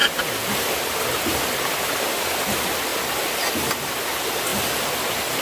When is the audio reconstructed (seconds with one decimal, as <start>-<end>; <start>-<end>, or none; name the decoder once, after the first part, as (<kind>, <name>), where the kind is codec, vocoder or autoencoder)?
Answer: 4.5-5.0 (vocoder, BigVGAN v2)